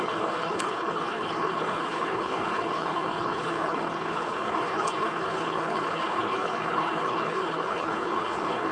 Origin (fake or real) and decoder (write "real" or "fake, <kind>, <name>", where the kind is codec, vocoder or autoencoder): fake, codec, HILCodec